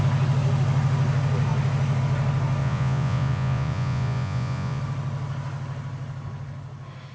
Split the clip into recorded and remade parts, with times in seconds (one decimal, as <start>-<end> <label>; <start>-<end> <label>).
0.0-2.6 recorded; 2.6-4.8 remade; 4.8-7.1 recorded